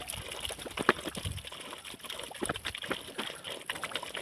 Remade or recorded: recorded